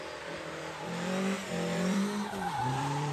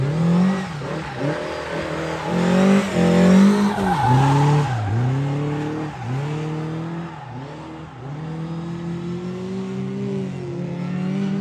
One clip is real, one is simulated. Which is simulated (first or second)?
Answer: first